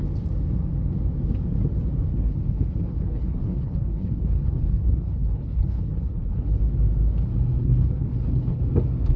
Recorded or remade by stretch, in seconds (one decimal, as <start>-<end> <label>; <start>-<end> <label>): 0.0-2.1 recorded; 2.1-6.6 remade; 6.6-7.6 recorded; 7.6-8.6 remade; 8.6-9.2 recorded